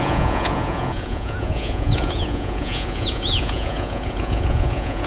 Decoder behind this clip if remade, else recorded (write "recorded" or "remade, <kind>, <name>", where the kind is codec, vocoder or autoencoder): remade, vocoder, Vocos